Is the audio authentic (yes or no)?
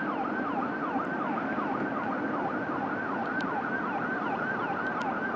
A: no